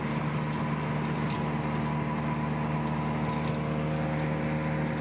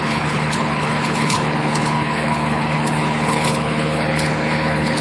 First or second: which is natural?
first